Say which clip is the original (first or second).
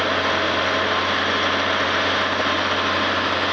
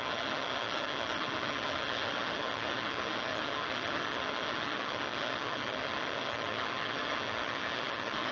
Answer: first